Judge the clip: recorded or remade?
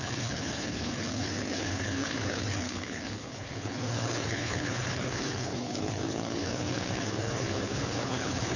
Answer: remade